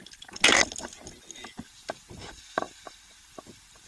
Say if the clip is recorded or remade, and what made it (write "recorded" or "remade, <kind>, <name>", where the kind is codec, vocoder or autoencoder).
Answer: recorded